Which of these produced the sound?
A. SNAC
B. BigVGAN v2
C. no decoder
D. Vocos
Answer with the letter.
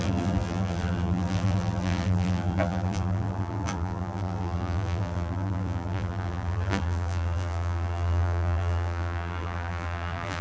B